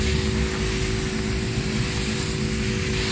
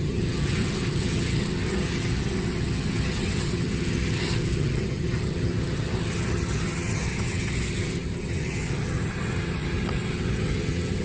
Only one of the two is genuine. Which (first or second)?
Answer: first